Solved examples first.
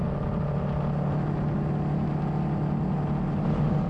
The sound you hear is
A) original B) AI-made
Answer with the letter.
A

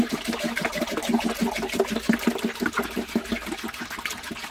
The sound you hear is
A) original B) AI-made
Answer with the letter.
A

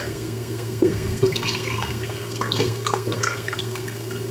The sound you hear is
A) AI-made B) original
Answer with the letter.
A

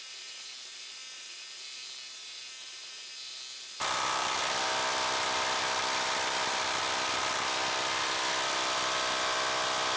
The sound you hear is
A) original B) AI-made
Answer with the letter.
A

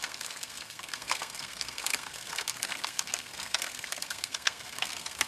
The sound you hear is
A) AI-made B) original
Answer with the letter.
A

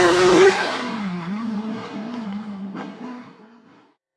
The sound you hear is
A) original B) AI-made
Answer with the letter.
B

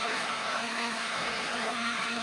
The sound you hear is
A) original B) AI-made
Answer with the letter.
B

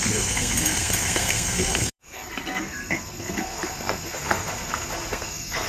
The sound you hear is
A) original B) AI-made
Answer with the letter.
B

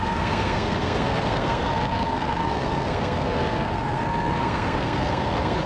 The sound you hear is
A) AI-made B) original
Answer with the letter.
A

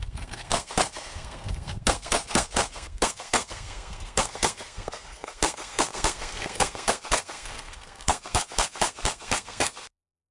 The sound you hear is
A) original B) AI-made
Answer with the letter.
B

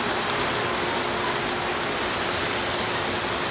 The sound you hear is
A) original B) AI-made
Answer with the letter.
A